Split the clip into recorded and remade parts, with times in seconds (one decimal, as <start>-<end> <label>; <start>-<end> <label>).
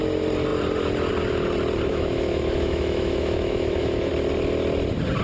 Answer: 0.0-1.9 recorded; 1.9-4.1 remade; 4.1-5.2 recorded